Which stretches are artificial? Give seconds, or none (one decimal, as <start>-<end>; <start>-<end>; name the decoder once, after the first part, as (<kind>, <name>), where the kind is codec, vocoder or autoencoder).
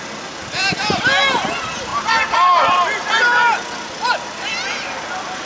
none